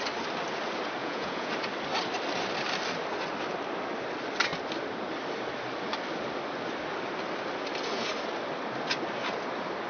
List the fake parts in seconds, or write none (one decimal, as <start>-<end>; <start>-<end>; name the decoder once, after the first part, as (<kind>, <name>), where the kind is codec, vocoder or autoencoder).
1.0-1.5 (vocoder, Vocos)

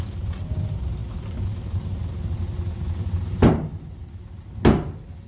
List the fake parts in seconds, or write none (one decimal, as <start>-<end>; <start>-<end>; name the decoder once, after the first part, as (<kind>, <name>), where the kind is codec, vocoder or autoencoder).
none

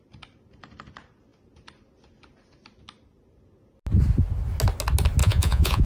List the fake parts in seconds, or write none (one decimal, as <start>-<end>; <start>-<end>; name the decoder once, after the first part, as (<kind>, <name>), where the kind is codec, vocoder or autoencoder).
5.2-5.9 (vocoder, Vocos)

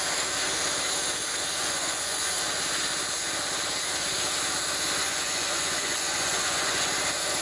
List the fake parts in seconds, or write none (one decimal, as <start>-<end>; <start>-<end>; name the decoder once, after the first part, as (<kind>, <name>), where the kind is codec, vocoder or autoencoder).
1.6-2.3 (vocoder, Vocos); 5.0-6.9

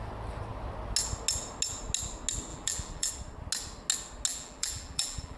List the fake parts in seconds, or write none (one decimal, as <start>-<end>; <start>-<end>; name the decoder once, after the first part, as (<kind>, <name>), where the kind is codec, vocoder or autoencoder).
2.5-3.1 (vocoder, BigVGAN v2); 4.3-5.4

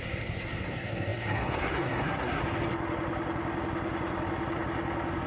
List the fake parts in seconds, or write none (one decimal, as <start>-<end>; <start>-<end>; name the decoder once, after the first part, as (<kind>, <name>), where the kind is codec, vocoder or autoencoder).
0.0-2.4 (codec, SNAC)

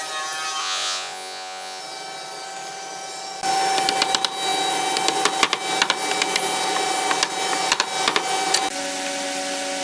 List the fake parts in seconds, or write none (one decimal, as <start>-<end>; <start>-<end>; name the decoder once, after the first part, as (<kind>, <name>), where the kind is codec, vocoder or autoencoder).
0.6-1.8 (vocoder, Vocos)

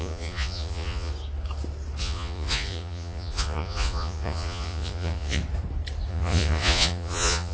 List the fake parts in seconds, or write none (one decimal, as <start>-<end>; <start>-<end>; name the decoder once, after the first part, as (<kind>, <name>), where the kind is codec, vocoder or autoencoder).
0.0-1.1 (vocoder, Vocos); 2.0-5.4; 6.1-7.5